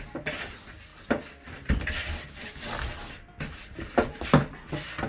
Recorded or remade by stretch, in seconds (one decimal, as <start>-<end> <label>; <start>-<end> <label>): 0.0-0.9 recorded; 0.9-2.8 remade; 2.8-5.1 recorded